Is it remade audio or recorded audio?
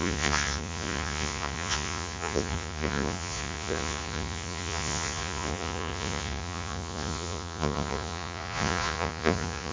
remade